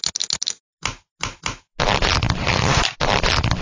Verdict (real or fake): real